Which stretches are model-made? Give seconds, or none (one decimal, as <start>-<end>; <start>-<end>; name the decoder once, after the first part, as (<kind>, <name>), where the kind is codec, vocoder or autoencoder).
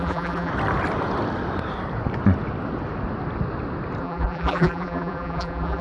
0.0-0.5 (vocoder, BigVGAN v2); 4.0-5.8